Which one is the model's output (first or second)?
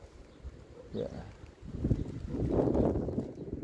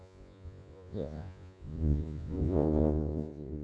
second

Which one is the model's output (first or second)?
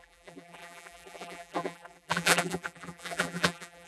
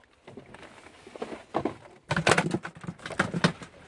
first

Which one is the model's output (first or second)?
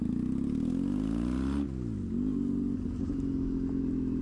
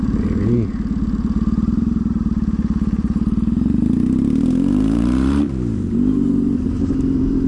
second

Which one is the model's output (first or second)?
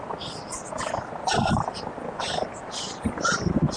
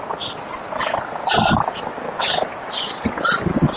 first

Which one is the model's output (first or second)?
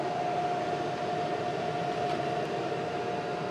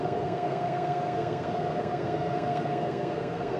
second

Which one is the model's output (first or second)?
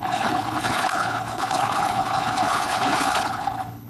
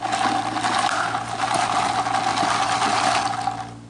first